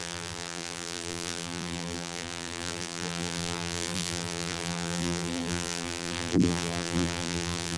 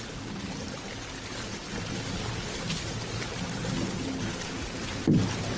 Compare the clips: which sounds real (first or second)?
second